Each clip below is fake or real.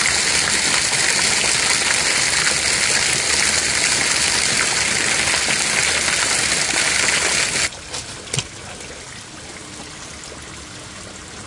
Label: real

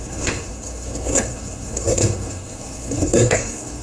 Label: fake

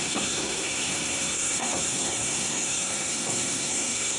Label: fake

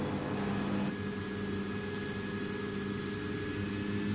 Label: real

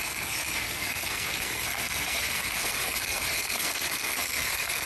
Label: fake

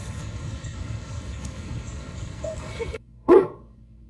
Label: fake